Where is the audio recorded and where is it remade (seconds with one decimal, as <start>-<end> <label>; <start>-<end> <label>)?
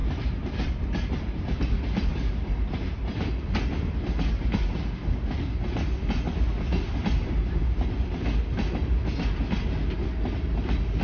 0.0-2.1 remade; 2.1-11.0 recorded